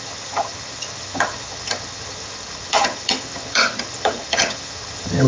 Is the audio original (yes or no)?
no